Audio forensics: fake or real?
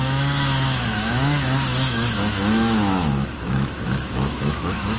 fake